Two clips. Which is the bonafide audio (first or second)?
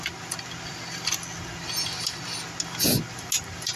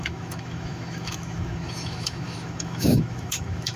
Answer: first